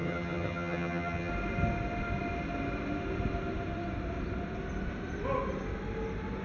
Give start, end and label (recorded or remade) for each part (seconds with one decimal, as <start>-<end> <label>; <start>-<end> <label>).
0.0-1.3 remade; 1.3-6.4 recorded